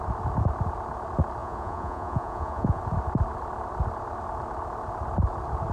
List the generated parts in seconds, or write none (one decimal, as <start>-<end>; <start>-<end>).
1.4-2.8